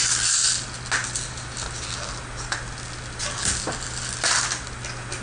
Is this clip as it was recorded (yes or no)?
yes